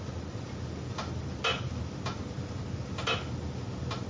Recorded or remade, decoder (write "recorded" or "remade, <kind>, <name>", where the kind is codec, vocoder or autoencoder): recorded